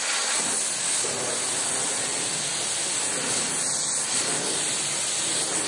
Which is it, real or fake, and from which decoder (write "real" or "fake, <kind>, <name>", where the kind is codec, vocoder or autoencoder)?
real